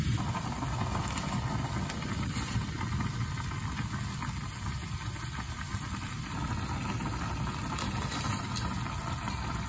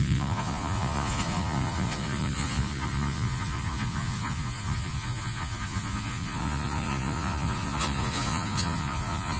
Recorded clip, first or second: first